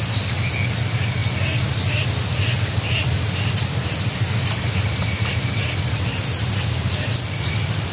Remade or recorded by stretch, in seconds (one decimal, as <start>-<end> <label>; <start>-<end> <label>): 0.0-7.9 recorded